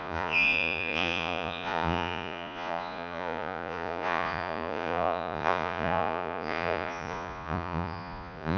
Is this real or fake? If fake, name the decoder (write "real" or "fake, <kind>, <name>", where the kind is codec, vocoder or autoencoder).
fake, vocoder, Vocos